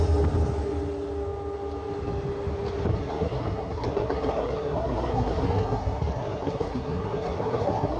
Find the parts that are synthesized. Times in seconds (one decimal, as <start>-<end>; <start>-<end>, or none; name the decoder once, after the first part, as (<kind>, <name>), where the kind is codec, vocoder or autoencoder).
2.9-8.0 (codec, SNAC)